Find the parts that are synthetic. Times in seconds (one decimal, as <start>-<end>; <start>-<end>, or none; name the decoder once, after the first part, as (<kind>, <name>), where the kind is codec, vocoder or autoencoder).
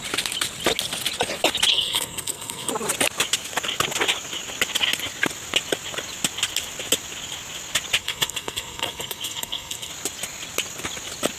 1.7-2.7 (codec, SNAC); 8.0-9.9